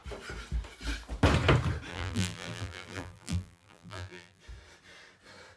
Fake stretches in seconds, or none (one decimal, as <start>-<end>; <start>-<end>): 1.9-4.4